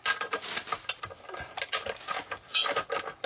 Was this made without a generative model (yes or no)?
yes